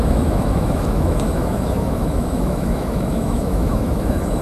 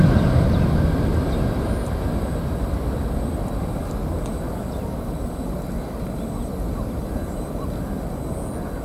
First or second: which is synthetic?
first